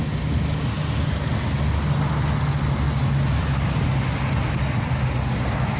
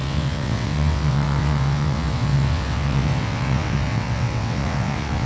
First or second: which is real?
first